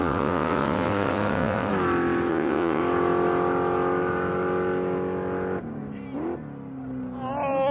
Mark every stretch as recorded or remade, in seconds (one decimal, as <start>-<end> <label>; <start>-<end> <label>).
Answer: 0.0-1.7 remade; 1.7-2.3 recorded; 2.3-2.8 remade; 2.8-7.7 recorded